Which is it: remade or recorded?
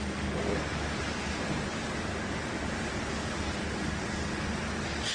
recorded